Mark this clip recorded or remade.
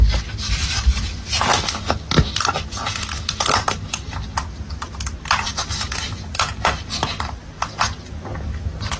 recorded